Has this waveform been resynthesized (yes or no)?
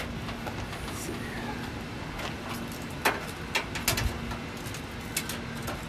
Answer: no